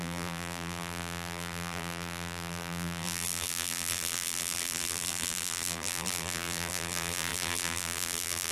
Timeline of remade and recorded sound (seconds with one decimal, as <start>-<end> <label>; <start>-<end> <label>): 0.0-8.5 remade

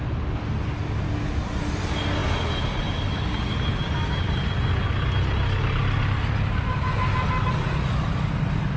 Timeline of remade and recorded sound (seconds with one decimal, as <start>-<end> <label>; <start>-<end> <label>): 0.0-8.8 recorded

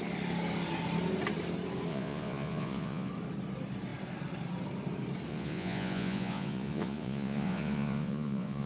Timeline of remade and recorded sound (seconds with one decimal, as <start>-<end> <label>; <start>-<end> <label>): 0.0-1.9 recorded; 1.9-3.1 remade; 3.1-5.3 recorded; 5.3-8.7 remade

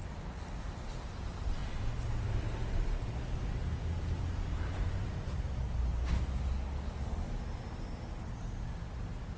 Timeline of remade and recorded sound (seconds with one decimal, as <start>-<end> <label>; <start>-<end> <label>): 0.0-9.4 recorded

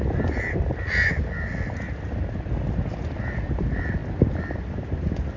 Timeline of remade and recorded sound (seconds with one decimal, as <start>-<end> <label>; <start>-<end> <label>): 0.0-5.4 recorded

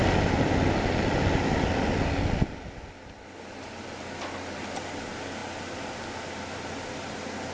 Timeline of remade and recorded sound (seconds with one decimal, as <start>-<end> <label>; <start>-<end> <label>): 0.0-7.5 recorded

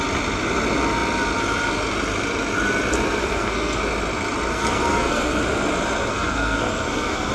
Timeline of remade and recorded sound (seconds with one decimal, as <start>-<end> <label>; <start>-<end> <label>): 0.0-3.2 recorded; 3.2-3.8 remade; 3.8-4.5 recorded; 4.5-5.4 remade; 5.4-6.1 recorded; 6.1-7.3 remade